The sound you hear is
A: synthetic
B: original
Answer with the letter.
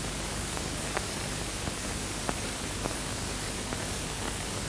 A